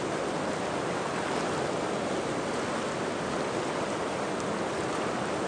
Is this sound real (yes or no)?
yes